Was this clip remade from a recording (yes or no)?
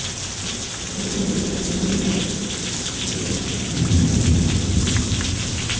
no